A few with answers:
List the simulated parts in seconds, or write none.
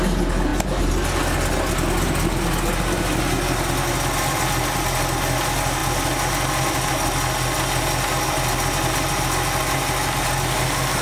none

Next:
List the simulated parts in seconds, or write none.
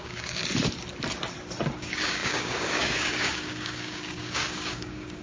0.0-0.4 (codec, DAC); 1.8-5.2